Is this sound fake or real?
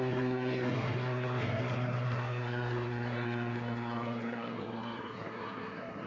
fake